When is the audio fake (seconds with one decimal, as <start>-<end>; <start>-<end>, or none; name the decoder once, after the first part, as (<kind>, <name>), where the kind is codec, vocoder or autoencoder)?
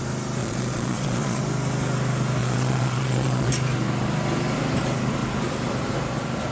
0.4-1.4 (vocoder, Vocos); 2.4-3.5